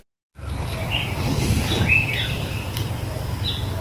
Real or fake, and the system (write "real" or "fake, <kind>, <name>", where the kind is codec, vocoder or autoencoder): real